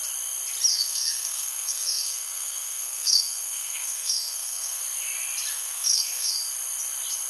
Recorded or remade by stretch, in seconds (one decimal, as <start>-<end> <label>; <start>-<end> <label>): 0.0-0.7 recorded; 0.7-4.8 remade; 4.8-5.5 recorded; 5.5-6.3 remade; 6.3-7.3 recorded